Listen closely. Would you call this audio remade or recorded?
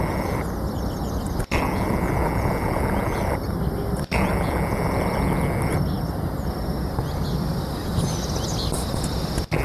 recorded